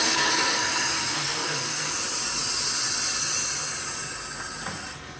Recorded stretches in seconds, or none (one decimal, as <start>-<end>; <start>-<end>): 1.9-5.2

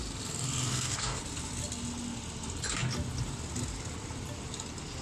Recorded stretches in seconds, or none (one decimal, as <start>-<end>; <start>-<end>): 0.0-0.7; 1.2-5.0

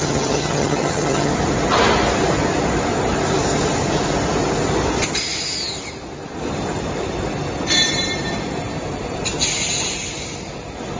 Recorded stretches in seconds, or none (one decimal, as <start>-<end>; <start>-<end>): 1.3-11.0

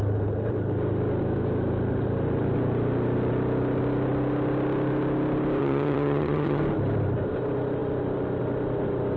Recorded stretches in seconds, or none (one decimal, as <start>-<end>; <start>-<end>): 0.0-5.6; 6.6-9.2

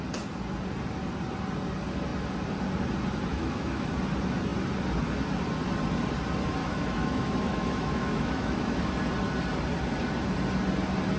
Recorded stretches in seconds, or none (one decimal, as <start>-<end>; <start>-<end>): 0.0-3.3; 3.9-6.6; 8.8-11.2

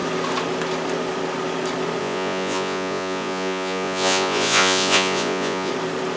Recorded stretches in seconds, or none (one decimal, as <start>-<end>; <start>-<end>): 0.0-2.0; 5.7-6.2

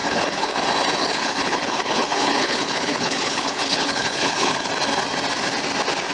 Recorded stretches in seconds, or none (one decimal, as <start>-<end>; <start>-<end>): 0.6-1.0; 4.7-6.1